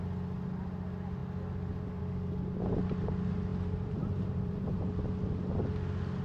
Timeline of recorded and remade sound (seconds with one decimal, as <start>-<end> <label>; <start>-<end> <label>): 0.0-3.5 recorded; 3.5-4.9 remade; 4.9-6.2 recorded